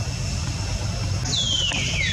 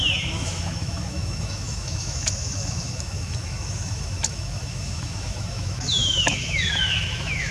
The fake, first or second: second